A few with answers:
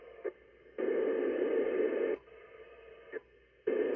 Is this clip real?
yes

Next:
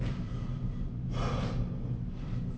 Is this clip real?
yes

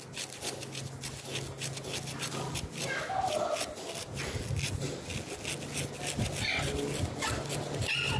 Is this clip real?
yes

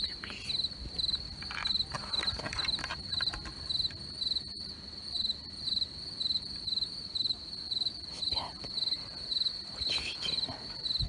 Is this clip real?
yes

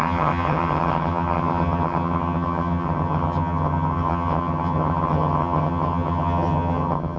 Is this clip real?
no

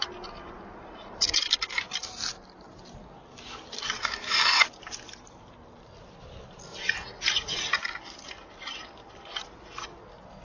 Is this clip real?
yes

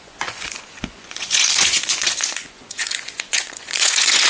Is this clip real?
no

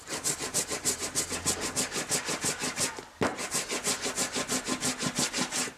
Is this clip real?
yes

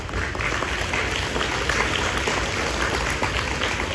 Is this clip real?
yes